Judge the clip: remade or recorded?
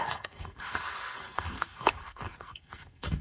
remade